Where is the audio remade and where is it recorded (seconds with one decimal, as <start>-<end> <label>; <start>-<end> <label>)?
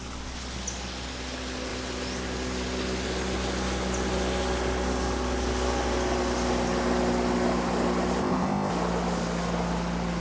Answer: 0.0-8.2 recorded; 8.2-8.7 remade; 8.7-10.2 recorded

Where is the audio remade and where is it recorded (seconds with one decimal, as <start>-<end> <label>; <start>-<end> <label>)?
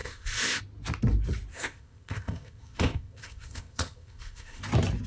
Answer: 0.0-0.6 remade; 0.6-1.5 recorded; 1.5-4.6 remade; 4.6-5.1 recorded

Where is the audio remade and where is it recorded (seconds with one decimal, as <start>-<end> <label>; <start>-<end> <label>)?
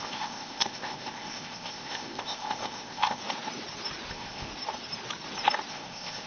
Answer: 0.0-3.2 remade; 3.2-4.1 recorded; 4.1-4.5 remade; 4.5-5.7 recorded; 5.7-6.3 remade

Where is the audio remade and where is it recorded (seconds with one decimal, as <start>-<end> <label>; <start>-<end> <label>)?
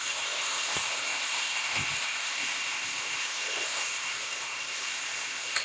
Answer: 0.0-5.6 remade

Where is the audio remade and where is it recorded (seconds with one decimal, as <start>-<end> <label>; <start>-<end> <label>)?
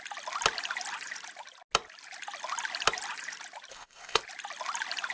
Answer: 0.0-3.7 recorded; 3.7-4.2 remade; 4.2-5.1 recorded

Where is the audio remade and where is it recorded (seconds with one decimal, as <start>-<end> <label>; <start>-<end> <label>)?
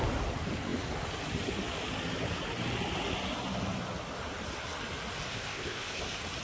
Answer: 0.0-5.3 recorded; 5.3-6.0 remade; 6.0-6.4 recorded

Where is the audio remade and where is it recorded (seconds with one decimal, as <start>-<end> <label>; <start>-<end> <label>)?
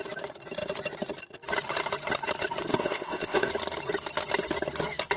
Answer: 0.0-2.7 recorded; 2.7-3.5 remade; 3.5-5.2 recorded